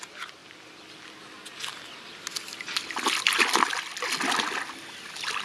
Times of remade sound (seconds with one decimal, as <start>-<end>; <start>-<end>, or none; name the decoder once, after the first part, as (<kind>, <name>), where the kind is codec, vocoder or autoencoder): none